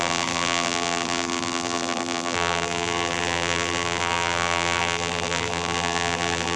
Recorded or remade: remade